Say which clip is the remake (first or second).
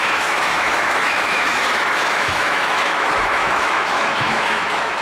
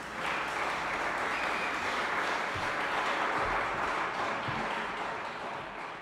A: first